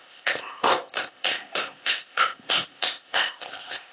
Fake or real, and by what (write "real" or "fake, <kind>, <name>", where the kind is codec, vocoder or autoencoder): fake, codec, ZipCodec